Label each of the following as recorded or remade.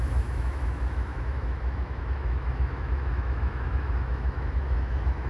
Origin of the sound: remade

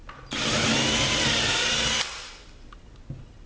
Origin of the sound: recorded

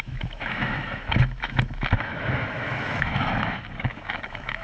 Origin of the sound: remade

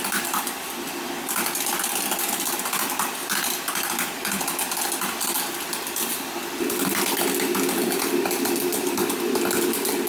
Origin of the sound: recorded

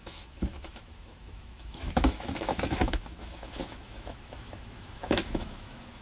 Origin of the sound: remade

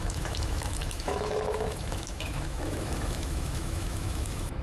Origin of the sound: remade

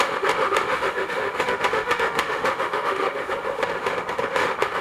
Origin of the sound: remade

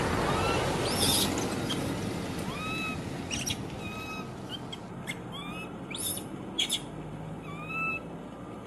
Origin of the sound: recorded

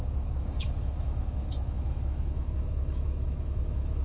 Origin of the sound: remade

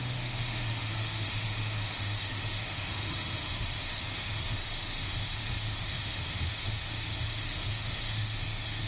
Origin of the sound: remade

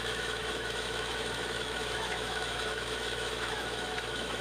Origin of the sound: remade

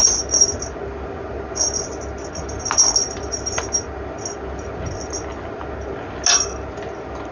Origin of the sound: recorded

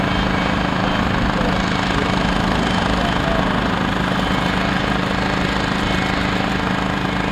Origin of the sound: recorded